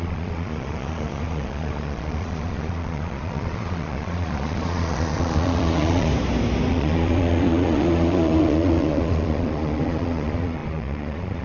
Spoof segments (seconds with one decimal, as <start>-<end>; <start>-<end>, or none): 0.0-6.1; 6.7-11.4